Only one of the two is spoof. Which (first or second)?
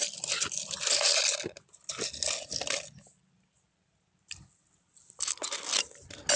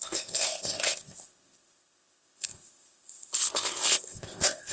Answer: second